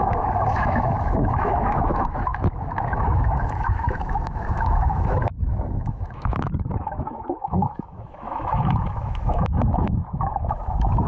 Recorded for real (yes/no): no